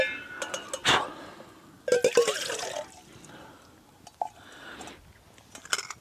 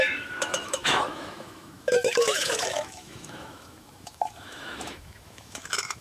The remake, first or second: second